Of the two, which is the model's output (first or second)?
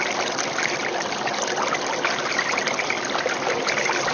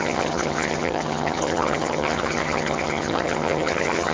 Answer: second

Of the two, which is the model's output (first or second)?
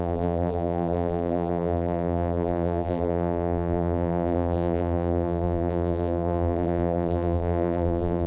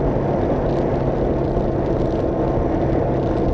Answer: first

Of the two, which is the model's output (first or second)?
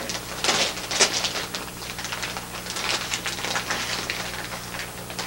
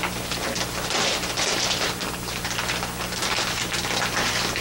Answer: second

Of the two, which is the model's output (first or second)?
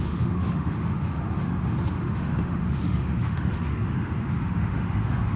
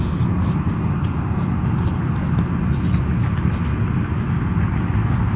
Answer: first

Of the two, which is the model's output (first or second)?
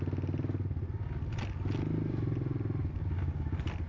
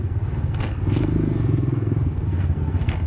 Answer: second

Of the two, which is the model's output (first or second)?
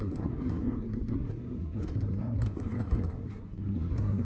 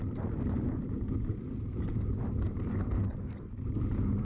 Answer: first